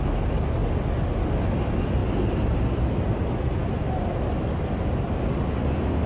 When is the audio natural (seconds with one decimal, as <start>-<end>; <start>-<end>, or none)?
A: 0.0-6.1